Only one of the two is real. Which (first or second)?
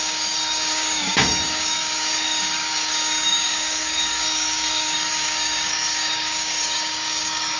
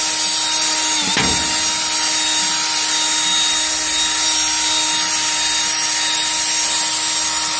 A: second